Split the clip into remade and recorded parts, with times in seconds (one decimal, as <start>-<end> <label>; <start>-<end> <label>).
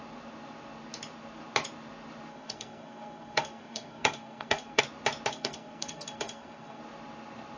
0.0-2.3 recorded; 2.3-4.8 remade; 4.8-5.3 recorded; 5.3-6.8 remade; 6.8-7.6 recorded